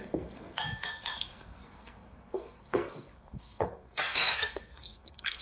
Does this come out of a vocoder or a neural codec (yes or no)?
yes